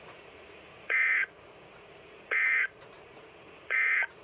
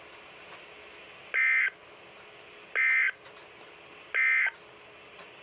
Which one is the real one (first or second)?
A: second